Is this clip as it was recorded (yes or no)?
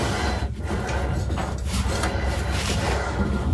yes